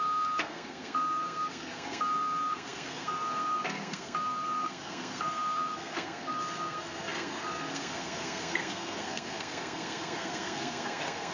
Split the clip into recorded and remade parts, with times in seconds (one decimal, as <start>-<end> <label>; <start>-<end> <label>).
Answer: 0.0-11.3 remade